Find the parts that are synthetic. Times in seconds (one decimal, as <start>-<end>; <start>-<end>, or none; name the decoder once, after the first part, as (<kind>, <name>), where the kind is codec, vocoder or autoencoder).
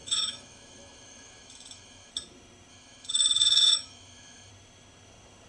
0.0-2.1 (autoencoder, DAC-VAE); 2.7-4.5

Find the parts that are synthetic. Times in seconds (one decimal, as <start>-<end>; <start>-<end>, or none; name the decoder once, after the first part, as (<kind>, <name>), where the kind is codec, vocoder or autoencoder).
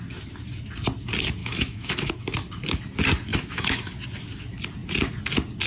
1.4-2.1 (autoencoder, DAC-VAE); 3.3-3.9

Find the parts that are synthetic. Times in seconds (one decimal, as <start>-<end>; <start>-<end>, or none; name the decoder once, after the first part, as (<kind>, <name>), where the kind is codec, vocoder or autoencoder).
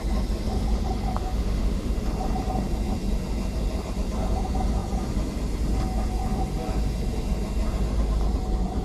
1.2-2.0 (autoencoder, DAC-VAE)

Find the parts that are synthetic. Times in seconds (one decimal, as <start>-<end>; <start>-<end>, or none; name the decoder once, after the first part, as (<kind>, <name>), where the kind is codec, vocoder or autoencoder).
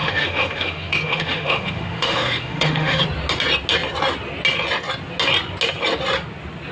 0.0-3.0 (autoencoder, DAC-VAE)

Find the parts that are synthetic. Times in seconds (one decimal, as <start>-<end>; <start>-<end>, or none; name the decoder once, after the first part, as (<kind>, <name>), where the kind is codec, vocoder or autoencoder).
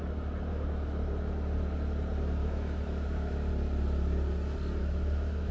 0.5-1.1 (autoencoder, DAC-VAE); 2.4-3.5; 4.8-5.5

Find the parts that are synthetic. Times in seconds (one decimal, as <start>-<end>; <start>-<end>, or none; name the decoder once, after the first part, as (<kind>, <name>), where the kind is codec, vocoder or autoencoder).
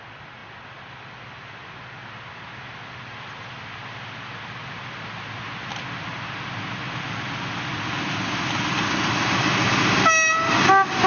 none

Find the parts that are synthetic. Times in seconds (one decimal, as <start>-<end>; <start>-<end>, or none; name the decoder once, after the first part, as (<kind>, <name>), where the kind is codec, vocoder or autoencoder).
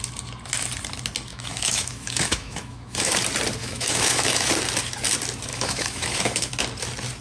1.3-3.1 (autoencoder, DAC-VAE); 3.6-4.5; 5.5-6.5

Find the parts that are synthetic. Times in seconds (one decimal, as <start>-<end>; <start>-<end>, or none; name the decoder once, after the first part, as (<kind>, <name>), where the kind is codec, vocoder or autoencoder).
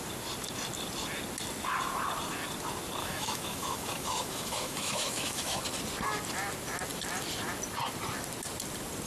3.0-5.6 (autoencoder, DAC-VAE)